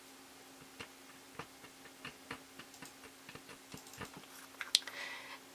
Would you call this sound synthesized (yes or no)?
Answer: no